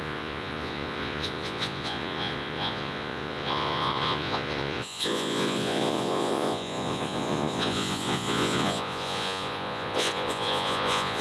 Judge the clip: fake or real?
fake